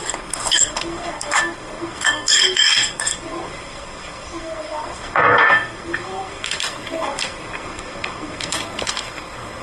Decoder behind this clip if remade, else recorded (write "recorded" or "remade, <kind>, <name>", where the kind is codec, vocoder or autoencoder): remade, codec, SNAC